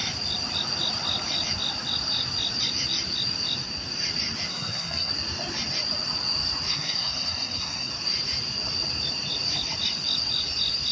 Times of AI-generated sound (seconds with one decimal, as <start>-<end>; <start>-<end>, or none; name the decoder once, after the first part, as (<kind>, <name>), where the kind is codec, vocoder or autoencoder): 4.5-5.1 (codec, SNAC); 6.7-7.9